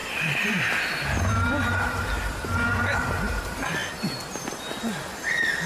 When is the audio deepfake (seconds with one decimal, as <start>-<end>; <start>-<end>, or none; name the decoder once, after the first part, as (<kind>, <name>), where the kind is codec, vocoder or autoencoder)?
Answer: 0.0-3.4 (vocoder, BigVGAN v2)